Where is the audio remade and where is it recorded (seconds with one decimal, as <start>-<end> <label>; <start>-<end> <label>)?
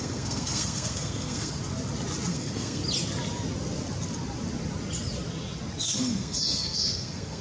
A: 0.0-1.6 remade; 1.6-2.3 recorded; 2.3-2.8 remade; 2.8-5.8 recorded; 5.8-7.4 remade